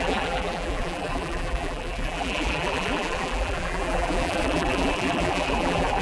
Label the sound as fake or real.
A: fake